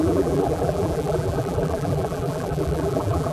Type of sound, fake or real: fake